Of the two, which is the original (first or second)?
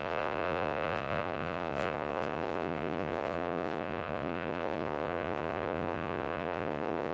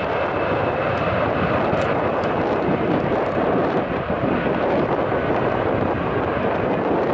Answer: second